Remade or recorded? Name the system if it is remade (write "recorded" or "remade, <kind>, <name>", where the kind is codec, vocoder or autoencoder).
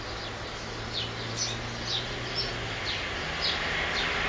recorded